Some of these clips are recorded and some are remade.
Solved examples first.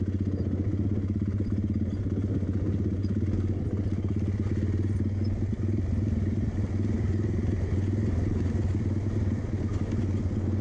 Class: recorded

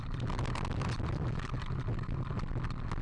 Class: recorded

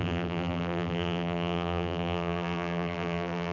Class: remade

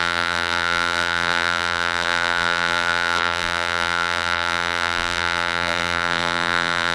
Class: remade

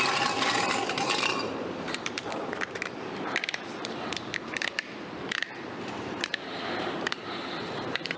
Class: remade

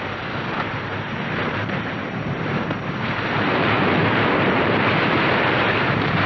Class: remade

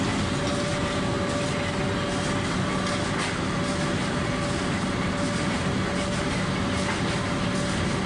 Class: recorded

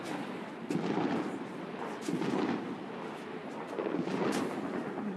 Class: recorded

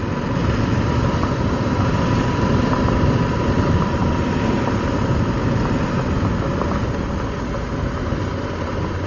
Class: recorded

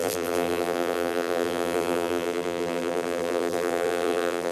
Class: remade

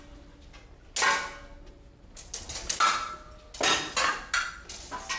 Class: recorded